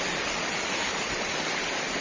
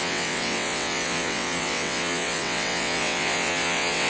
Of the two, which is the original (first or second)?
first